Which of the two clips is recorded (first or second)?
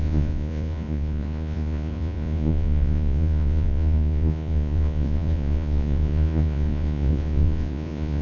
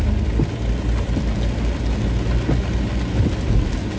second